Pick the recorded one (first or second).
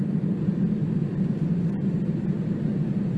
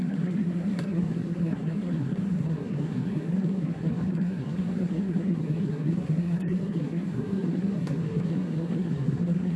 first